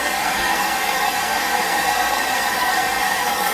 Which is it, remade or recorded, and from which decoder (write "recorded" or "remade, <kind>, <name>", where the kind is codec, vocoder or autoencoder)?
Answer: remade, codec, SNAC